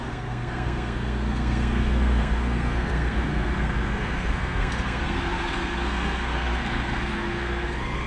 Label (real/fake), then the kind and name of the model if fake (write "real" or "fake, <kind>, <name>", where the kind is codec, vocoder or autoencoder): fake, codec, SNAC